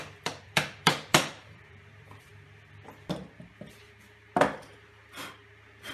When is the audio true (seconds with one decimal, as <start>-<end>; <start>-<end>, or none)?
2.3-5.9

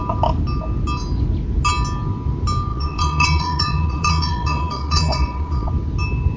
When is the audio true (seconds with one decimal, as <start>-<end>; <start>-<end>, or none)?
0.0-2.7; 5.7-6.4

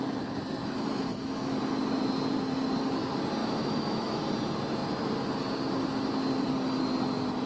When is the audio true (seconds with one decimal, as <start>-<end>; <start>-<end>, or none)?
0.0-0.6; 1.6-3.4; 4.2-7.5

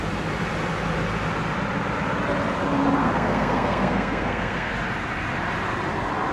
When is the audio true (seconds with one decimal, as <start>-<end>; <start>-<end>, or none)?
0.0-3.0; 4.7-6.3

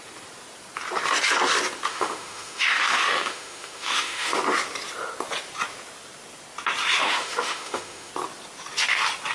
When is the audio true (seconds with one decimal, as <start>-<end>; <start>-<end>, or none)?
0.0-1.9; 4.4-7.0; 8.1-9.3

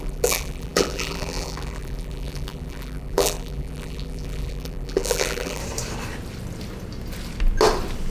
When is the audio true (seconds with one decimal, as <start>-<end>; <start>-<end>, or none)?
5.6-8.1